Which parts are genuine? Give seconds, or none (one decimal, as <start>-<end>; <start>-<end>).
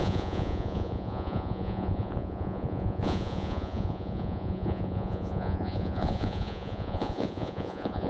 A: none